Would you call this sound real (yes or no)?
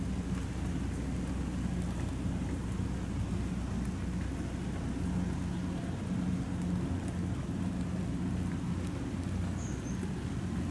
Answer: yes